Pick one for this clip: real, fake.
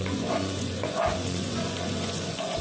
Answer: fake